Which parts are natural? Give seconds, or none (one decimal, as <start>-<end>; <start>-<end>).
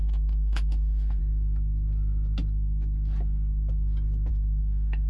1.2-4.3